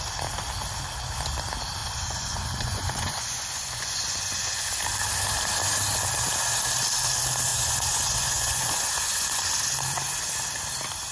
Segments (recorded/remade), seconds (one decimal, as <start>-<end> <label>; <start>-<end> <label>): 0.0-1.8 recorded; 1.8-4.7 remade; 4.7-7.5 recorded; 7.5-9.4 remade; 9.4-11.1 recorded